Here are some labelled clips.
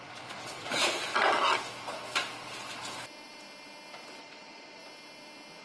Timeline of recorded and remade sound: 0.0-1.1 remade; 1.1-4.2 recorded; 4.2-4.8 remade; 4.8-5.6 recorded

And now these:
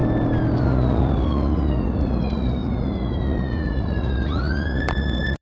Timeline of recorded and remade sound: 0.0-0.6 recorded; 0.6-5.4 remade